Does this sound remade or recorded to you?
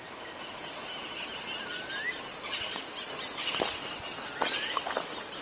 recorded